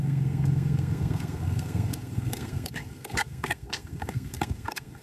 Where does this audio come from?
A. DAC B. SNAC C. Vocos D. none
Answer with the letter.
B